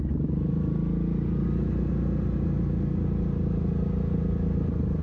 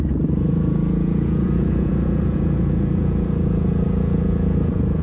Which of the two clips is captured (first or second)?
first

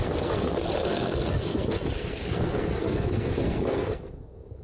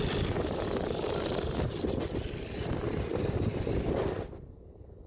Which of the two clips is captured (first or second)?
second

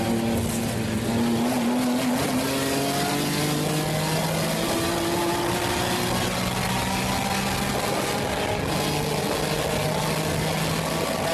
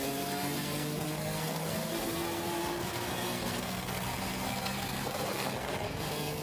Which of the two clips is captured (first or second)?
first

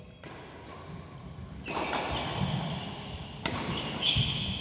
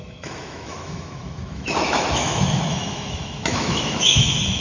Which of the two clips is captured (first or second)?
first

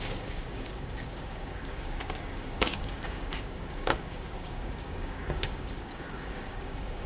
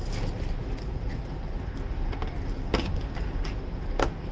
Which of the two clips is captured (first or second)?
second